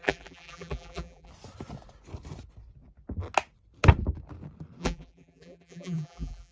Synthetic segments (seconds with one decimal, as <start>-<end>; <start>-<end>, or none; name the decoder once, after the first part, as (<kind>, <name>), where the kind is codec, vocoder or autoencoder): 0.0-1.3 (vocoder, BigVGAN v2); 4.8-6.5